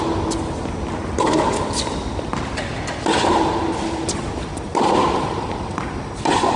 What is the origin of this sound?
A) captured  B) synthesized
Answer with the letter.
A